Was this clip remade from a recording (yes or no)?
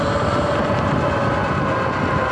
no